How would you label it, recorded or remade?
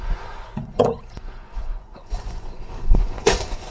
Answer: remade